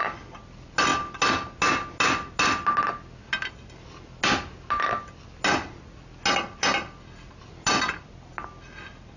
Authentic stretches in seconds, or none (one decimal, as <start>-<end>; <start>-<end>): 0.0-9.2